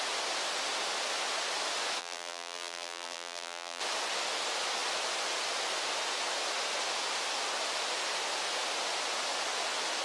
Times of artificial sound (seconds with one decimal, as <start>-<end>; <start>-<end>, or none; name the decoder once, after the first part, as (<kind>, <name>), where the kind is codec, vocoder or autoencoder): 2.0-3.8 (vocoder, BigVGAN v2)